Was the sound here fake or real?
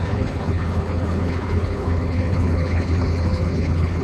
fake